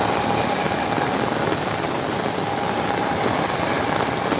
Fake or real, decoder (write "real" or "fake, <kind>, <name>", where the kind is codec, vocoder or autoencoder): fake, vocoder, BigVGAN v2